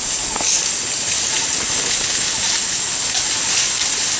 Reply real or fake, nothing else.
real